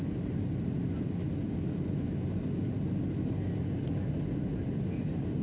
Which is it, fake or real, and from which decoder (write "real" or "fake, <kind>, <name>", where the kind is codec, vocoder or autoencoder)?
real